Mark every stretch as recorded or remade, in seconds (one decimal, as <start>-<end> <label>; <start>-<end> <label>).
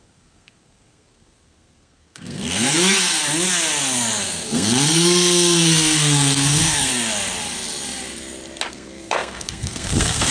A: 0.0-3.2 remade; 3.2-4.2 recorded; 4.2-6.9 remade; 6.9-8.7 recorded; 8.7-10.3 remade